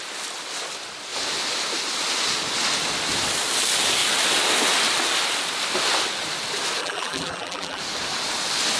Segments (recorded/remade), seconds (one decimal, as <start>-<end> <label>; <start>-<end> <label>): 0.0-6.8 recorded; 6.8-7.8 remade; 7.8-8.8 recorded